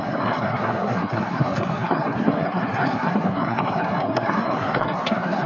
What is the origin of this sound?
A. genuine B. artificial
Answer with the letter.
B